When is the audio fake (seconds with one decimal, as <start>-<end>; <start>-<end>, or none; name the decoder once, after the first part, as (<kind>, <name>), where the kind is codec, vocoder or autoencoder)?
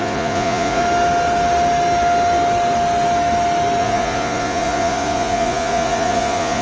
0.0-0.8 (vocoder, Vocos); 3.8-6.6